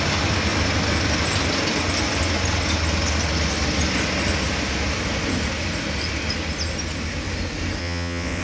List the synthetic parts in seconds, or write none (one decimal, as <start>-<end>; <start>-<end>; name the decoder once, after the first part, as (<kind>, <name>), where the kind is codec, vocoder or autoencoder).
7.8-8.4 (vocoder, WaveNeXt)